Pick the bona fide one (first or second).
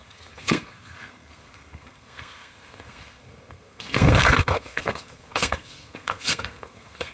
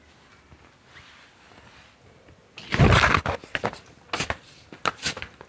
second